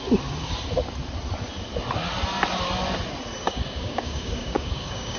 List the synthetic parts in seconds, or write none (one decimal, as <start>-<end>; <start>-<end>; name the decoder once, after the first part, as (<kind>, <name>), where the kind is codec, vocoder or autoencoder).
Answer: 3.4-5.2 (codec, DAC)